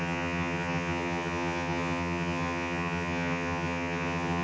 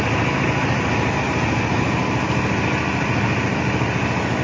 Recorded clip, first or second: second